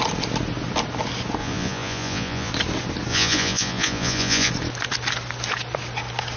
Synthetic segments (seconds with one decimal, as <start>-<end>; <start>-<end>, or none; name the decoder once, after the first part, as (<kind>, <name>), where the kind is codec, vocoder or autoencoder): 1.4-2.5 (vocoder, Vocos); 3.1-4.5